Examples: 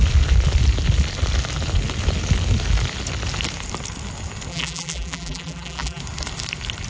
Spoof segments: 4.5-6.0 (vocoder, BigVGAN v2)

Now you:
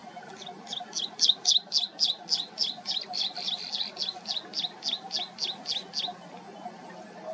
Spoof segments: none